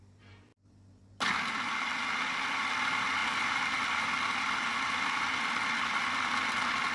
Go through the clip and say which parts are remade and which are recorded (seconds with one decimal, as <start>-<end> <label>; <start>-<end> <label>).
0.0-6.9 recorded